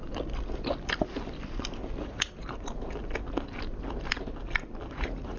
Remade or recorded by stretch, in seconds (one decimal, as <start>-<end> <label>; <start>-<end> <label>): 0.0-2.0 recorded; 2.0-2.4 remade; 2.4-4.9 recorded; 4.9-5.4 remade